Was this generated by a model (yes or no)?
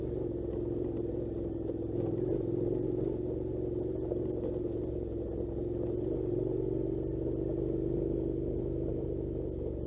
no